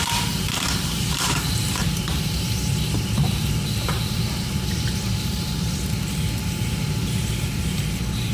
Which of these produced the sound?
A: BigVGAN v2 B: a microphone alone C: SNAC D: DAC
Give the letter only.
A